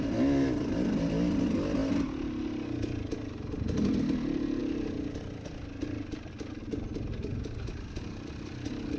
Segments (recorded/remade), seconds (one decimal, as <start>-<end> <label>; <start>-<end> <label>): 0.0-9.0 recorded